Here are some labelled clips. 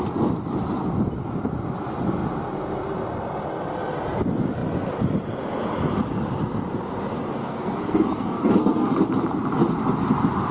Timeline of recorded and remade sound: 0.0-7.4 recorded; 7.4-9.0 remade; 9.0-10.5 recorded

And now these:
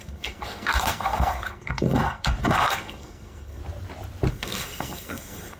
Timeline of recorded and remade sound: 0.0-3.6 remade; 3.6-4.3 recorded; 4.3-5.6 remade